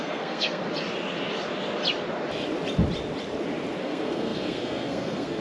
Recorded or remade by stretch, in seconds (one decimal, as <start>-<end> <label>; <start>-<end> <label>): 0.0-0.6 remade; 0.6-3.8 recorded; 3.8-5.4 remade